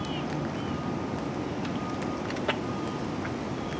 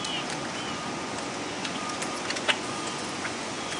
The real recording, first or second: first